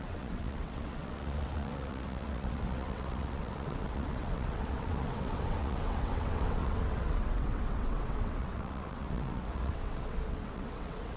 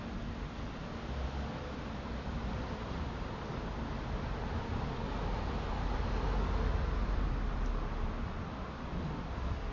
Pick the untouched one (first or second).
second